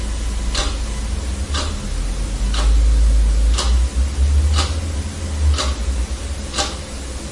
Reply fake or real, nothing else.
real